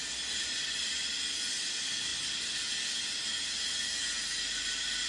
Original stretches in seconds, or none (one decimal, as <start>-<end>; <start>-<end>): 0.0-5.1